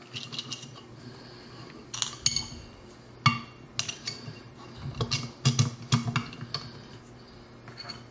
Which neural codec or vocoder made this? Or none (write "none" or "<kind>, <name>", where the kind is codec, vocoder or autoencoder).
none